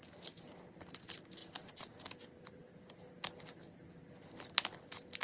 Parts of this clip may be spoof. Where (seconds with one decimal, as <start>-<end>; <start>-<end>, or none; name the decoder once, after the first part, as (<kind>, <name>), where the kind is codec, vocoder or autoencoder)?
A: none